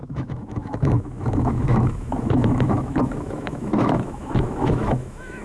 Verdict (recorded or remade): remade